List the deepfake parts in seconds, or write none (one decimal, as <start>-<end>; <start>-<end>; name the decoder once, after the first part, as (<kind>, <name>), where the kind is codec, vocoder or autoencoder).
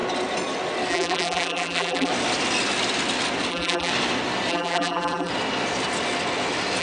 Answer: 0.9-2.1 (vocoder, BigVGAN v2); 3.5-3.9; 4.5-5.3